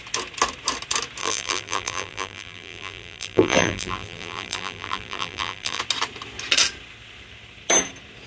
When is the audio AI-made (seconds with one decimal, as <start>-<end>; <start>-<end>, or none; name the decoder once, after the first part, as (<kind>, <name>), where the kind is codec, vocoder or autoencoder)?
1.2-5.8 (vocoder, BigVGAN v2)